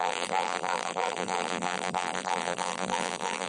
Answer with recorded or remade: remade